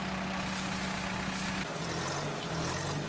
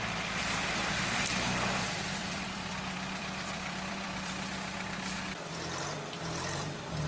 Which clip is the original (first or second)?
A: first